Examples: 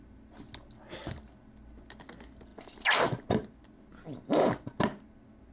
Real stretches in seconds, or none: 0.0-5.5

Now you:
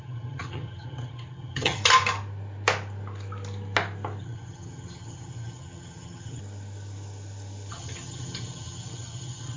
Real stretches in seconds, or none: 1.8-4.2; 6.4-7.7

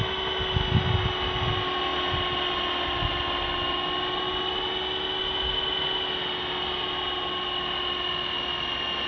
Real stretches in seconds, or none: 0.0-9.1